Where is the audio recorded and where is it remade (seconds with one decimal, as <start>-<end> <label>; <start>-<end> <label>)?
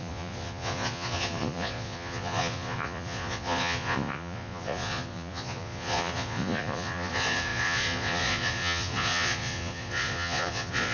0.0-10.9 remade